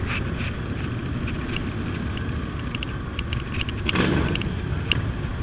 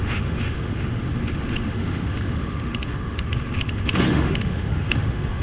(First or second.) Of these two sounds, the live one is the first